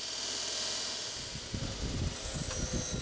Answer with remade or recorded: recorded